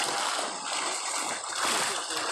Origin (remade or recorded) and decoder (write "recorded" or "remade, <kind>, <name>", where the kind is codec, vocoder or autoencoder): recorded